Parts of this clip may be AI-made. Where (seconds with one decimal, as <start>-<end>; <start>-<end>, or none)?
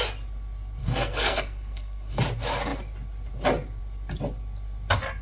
0.8-2.2